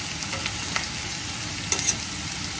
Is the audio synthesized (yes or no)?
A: no